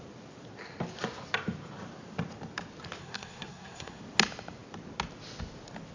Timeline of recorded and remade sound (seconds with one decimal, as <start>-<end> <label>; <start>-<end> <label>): 0.0-3.0 recorded; 3.0-4.0 remade; 4.0-5.9 recorded